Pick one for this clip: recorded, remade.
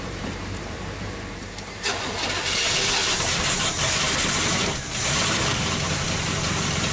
remade